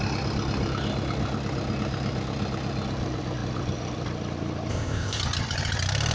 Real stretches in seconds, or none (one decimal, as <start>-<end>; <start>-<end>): 0.0-4.7; 5.2-6.1